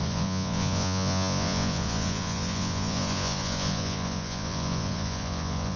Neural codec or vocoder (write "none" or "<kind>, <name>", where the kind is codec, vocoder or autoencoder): vocoder, Vocos